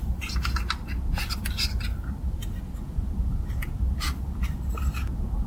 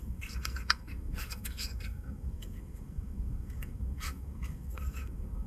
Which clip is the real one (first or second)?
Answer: first